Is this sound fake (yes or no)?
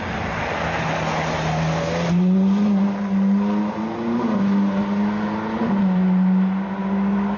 no